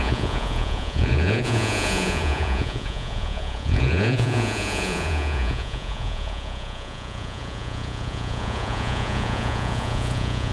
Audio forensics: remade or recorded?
remade